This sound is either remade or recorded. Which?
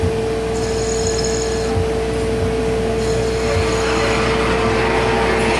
recorded